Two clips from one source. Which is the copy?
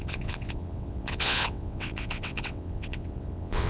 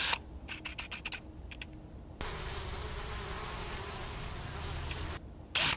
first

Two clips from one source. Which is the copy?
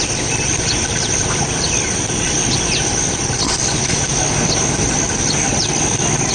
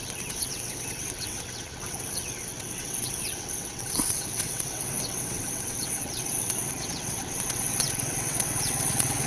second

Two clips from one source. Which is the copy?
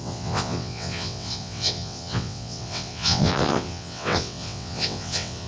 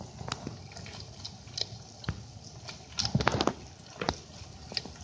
first